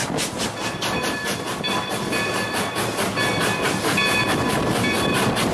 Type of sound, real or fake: real